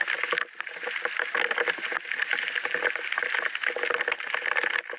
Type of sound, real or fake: real